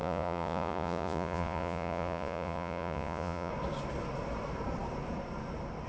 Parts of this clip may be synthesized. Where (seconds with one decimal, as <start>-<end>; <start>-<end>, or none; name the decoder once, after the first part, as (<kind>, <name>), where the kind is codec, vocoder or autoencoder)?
0.0-3.5 (vocoder, Vocos)